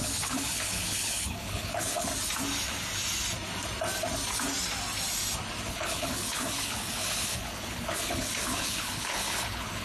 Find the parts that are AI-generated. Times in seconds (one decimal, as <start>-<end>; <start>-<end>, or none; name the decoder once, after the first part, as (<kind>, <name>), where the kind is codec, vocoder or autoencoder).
0.0-2.1 (codec, HILCodec); 5.7-9.8